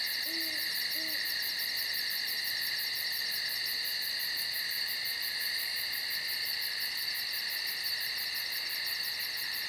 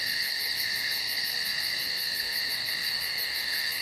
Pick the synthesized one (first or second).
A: second